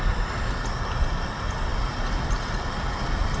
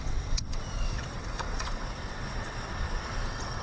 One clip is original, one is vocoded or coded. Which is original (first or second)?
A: first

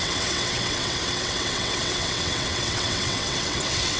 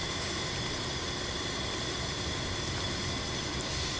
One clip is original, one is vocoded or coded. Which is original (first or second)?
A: second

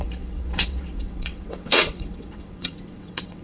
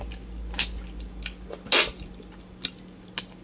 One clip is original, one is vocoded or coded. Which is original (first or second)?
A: second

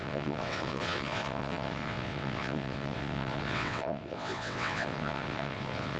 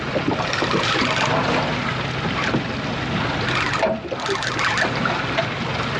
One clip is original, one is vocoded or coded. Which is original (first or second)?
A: second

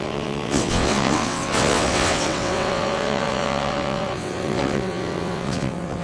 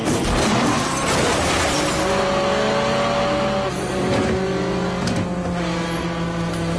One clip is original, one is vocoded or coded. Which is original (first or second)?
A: second